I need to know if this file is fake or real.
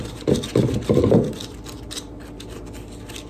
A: real